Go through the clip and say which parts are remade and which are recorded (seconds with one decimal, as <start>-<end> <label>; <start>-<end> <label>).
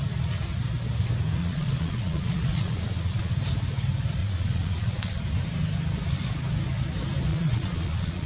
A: 0.0-1.4 recorded; 1.4-3.3 remade; 3.3-4.2 recorded; 4.2-5.2 remade; 5.2-7.3 recorded; 7.3-8.3 remade